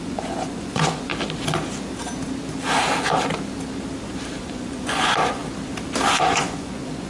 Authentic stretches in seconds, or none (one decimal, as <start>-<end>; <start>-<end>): 1.1-4.4; 5.4-6.1